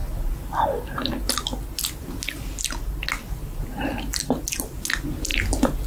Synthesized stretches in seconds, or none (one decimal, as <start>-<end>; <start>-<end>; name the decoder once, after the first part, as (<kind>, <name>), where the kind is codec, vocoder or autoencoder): none